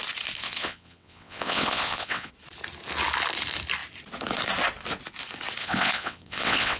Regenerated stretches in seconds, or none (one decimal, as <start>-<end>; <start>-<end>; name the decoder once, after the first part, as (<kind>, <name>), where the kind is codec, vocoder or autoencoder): 0.4-2.3 (vocoder, WaveNeXt); 5.6-6.8